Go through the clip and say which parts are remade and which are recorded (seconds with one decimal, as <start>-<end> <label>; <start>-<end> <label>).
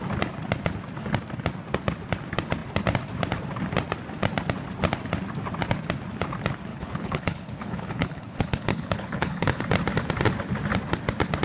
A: 0.0-6.7 recorded; 6.7-9.6 remade; 9.6-11.4 recorded